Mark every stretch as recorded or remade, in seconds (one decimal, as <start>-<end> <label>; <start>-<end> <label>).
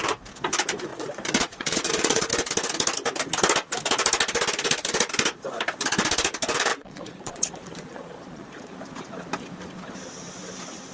0.0-0.9 recorded; 0.9-2.3 remade; 2.3-6.7 recorded; 6.7-8.7 remade; 8.7-10.9 recorded